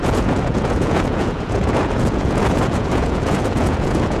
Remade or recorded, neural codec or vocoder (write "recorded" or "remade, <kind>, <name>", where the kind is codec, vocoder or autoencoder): remade, vocoder, Vocos